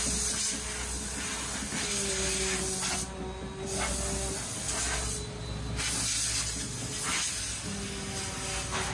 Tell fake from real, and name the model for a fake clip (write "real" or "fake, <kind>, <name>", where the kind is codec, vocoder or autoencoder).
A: real